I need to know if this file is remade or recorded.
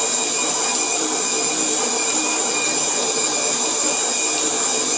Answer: remade